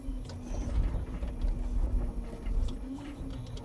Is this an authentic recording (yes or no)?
yes